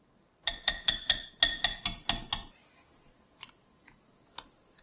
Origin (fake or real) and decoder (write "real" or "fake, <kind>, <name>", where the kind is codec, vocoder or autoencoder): real